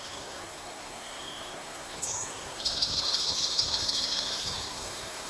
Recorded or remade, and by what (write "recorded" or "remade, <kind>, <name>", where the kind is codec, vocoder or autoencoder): remade, codec, SNAC